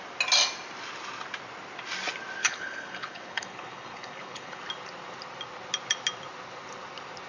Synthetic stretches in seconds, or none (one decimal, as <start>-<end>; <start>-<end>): 2.4-4.6